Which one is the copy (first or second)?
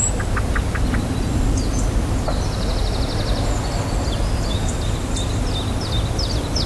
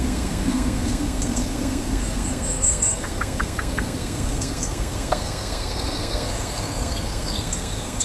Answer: second